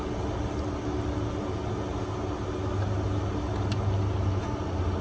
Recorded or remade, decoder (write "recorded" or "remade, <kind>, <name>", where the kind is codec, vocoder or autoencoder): recorded